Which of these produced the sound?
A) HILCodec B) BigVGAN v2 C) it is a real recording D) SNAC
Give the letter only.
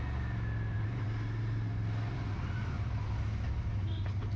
C